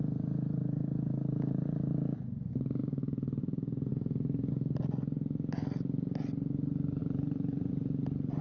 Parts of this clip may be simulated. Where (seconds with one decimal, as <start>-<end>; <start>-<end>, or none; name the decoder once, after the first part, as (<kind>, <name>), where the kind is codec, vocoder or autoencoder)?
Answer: 3.9-4.5 (vocoder, BigVGAN v2); 7.0-7.7